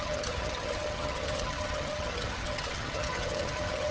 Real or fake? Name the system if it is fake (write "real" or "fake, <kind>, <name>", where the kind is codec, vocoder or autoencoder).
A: fake, vocoder, HiFi-GAN